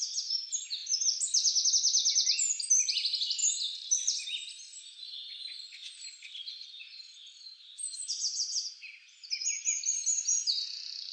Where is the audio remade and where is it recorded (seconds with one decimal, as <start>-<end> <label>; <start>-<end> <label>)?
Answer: 0.0-3.4 recorded; 3.4-8.1 remade; 8.1-11.1 recorded